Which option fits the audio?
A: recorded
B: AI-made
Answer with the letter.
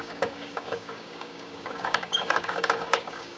B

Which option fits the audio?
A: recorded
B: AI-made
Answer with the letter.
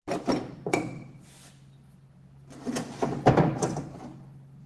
A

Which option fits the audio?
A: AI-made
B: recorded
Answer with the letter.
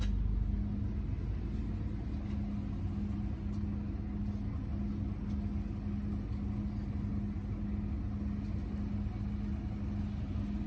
B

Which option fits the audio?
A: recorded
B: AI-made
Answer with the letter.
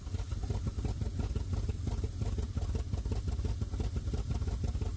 A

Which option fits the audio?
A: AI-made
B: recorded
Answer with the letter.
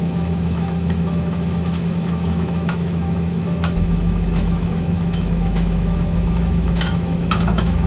A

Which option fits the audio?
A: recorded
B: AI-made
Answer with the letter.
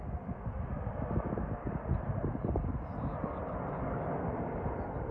A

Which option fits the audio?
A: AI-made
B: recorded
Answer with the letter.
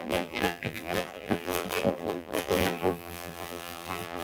A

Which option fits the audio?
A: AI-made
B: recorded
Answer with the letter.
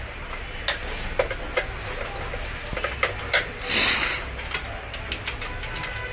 B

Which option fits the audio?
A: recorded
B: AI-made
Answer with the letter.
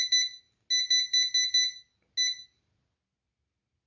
A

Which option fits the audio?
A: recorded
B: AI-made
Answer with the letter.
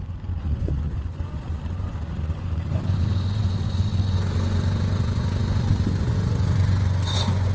B